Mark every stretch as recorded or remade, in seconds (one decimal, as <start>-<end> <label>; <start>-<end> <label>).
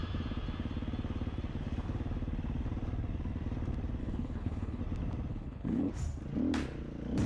0.0-4.0 recorded; 4.0-4.8 remade; 4.8-5.3 recorded; 5.3-5.9 remade; 5.9-7.3 recorded